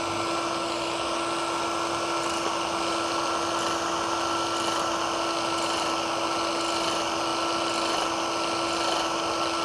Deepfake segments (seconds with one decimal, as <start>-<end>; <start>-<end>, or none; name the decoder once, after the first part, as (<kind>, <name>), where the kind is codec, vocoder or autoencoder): none